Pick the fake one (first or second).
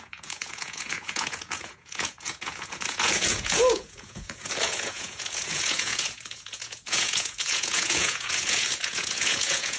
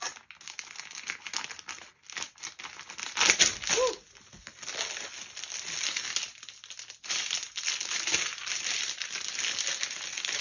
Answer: first